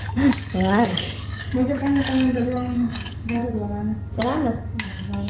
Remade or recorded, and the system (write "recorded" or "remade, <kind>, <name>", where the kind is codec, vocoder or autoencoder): remade, codec, DAC